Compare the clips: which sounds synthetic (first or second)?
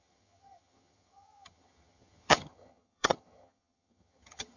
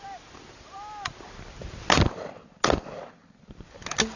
first